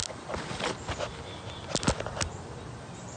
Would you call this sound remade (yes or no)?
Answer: no